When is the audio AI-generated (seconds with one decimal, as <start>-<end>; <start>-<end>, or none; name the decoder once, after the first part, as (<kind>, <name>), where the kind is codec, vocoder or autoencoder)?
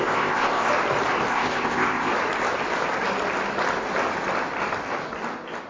0.0-0.7 (codec, ZipCodec); 1.3-2.1